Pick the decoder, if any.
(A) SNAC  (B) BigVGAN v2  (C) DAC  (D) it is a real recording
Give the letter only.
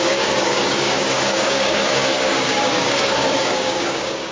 C